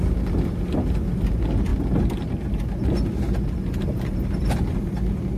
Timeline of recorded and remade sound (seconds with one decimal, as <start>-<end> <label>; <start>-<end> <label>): 0.0-5.4 recorded